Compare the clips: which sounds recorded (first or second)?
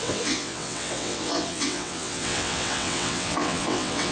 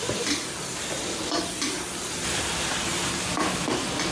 second